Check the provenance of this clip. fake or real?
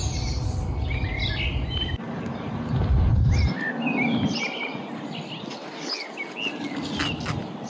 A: real